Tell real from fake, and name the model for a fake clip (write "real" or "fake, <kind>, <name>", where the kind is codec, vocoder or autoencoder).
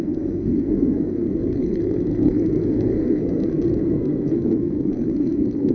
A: fake, codec, SNAC